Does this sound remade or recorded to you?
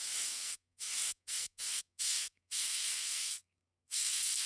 remade